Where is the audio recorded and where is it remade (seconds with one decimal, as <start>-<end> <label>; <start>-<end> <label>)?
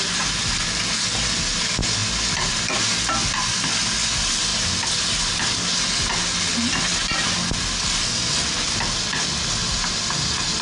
0.0-10.6 recorded